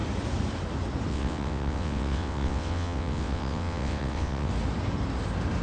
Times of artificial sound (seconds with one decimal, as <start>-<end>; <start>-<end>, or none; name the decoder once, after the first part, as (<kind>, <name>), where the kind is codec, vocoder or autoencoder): 1.1-4.5 (vocoder, WaveNeXt)